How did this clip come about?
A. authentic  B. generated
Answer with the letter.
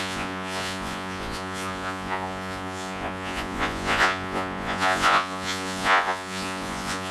B